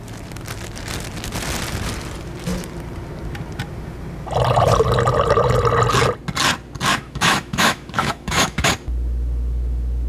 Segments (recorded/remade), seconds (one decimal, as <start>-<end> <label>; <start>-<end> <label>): 0.0-6.9 recorded; 6.9-8.7 remade; 8.7-10.1 recorded